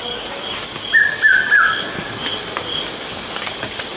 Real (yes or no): yes